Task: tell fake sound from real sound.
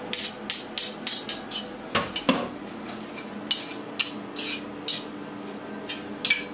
real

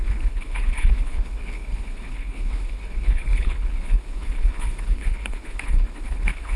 fake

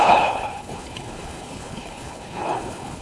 fake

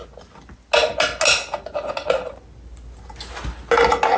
real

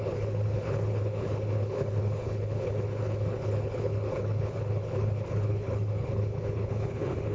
fake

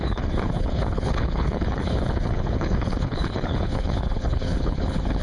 fake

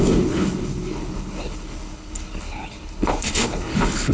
fake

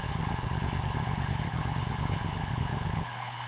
fake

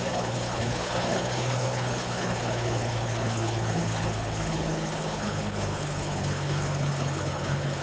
fake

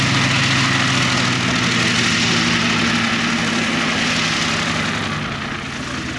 real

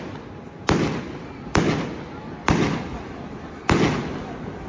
real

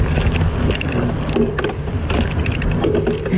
real